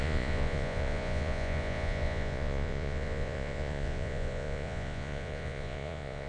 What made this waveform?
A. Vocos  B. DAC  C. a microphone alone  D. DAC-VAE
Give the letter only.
A